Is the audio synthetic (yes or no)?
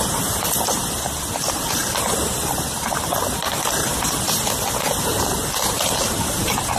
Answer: no